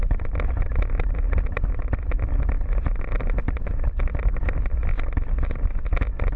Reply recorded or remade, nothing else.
recorded